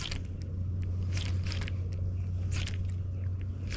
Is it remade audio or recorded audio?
recorded